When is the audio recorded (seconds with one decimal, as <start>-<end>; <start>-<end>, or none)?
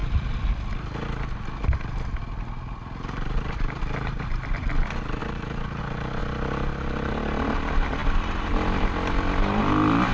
0.0-5.2; 5.8-10.1